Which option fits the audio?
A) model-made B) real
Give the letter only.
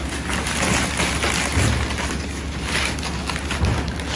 B